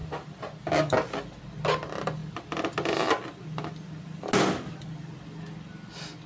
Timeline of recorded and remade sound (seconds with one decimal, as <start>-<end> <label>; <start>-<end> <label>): 0.0-1.4 remade; 1.4-6.3 recorded